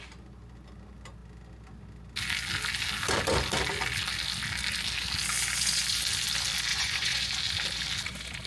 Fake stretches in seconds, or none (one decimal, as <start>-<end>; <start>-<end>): 6.7-7.3

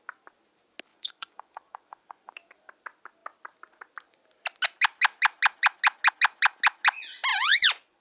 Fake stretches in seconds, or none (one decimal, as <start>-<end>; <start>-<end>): 0.9-2.3; 7.3-8.0

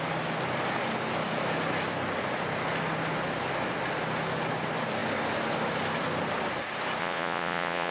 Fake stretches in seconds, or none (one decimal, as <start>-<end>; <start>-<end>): 7.0-7.9

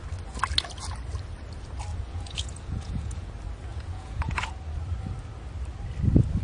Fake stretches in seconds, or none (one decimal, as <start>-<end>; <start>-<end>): 1.9-3.3; 3.7-4.5

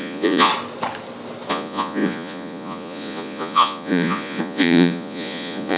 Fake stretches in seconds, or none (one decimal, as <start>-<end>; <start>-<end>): 0.0-0.5; 1.5-5.8

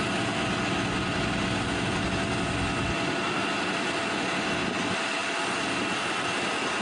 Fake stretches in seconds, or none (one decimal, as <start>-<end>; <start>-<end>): none